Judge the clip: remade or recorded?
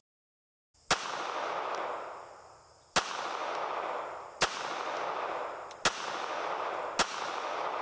recorded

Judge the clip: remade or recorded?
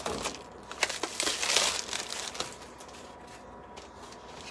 recorded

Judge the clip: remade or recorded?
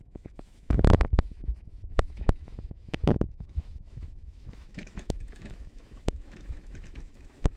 remade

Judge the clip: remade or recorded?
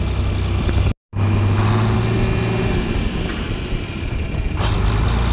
recorded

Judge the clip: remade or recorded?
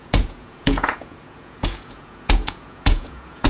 remade